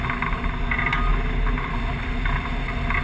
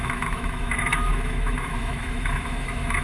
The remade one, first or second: second